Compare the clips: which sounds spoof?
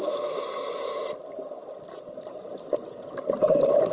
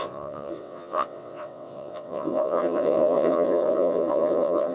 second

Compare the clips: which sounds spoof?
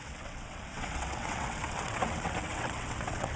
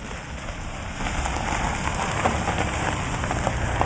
first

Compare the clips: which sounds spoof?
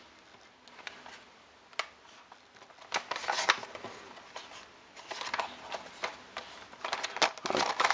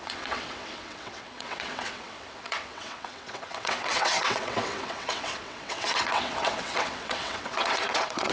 second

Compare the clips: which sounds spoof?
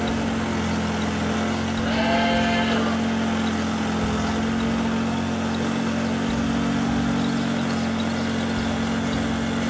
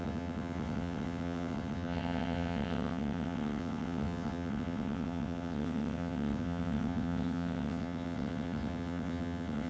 second